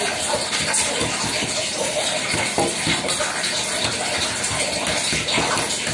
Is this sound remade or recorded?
recorded